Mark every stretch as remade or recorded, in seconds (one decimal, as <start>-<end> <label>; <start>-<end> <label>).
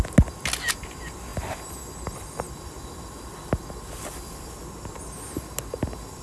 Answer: 0.0-6.2 recorded